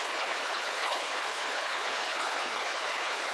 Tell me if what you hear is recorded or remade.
remade